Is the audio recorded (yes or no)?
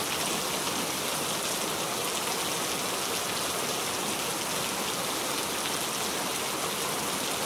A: yes